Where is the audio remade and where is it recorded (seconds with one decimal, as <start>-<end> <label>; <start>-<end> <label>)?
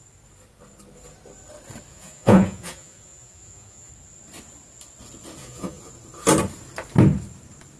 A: 0.0-1.9 recorded; 1.9-3.9 remade; 3.9-5.4 recorded; 5.4-5.9 remade; 5.9-7.8 recorded